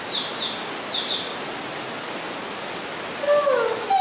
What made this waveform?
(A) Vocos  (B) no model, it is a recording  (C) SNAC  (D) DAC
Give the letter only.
B